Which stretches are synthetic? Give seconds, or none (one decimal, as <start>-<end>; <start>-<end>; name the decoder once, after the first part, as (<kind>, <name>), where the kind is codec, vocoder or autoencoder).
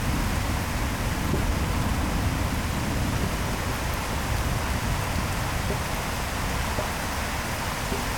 none